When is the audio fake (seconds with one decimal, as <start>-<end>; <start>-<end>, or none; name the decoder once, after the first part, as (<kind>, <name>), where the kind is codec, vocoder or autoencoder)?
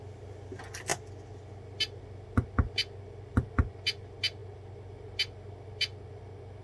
none